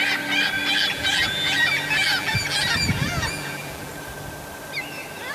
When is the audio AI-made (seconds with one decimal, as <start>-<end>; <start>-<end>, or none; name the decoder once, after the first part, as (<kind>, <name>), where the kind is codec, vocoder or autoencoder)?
0.7-3.9 (vocoder, BigVGAN v2)